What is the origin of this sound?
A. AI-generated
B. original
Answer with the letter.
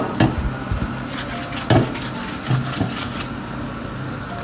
B